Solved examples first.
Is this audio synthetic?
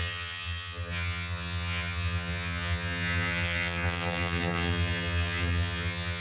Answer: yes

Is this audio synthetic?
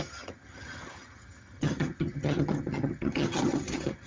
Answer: yes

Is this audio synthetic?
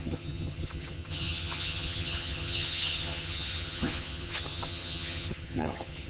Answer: yes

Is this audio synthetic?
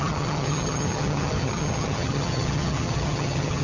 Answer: yes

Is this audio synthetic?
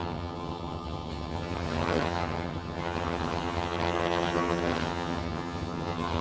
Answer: yes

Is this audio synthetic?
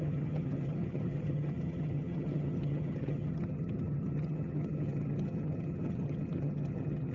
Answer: yes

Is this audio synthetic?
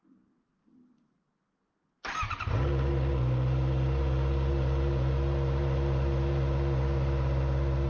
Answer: no